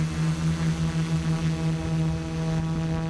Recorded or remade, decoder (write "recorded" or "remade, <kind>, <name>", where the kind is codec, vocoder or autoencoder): recorded